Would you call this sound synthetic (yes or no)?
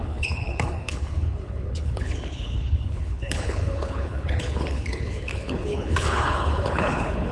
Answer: yes